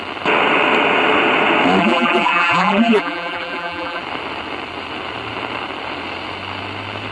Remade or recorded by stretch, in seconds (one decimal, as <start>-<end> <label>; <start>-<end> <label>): 0.0-1.8 recorded; 1.8-4.0 remade; 4.0-7.1 recorded